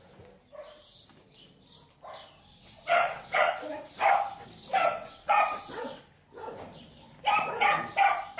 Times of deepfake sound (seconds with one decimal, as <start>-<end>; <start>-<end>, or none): 2.4-3.6; 4.7-6.0